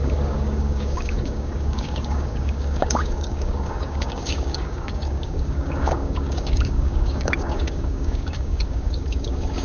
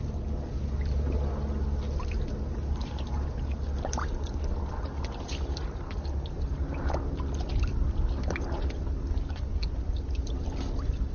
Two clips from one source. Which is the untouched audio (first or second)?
second